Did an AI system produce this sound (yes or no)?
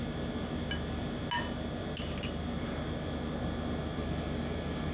no